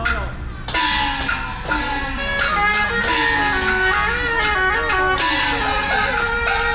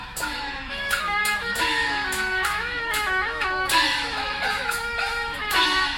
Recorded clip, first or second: first